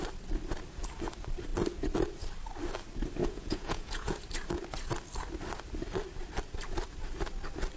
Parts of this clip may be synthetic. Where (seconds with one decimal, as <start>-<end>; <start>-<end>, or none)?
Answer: 3.2-4.2